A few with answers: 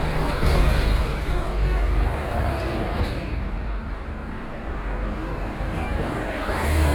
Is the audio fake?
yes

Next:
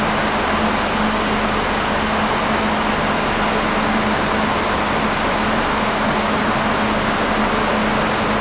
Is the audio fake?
no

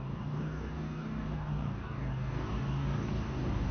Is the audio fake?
yes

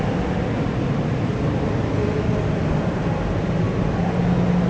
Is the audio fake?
no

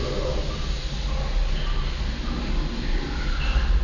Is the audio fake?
no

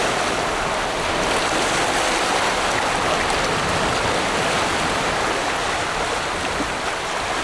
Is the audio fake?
no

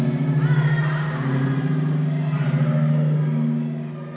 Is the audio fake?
no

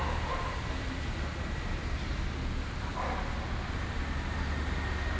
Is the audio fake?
no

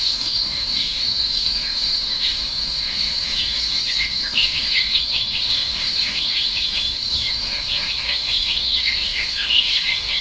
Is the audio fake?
yes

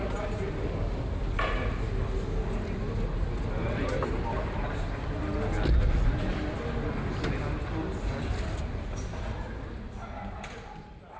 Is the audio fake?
no